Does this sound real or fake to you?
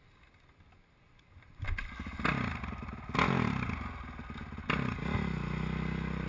real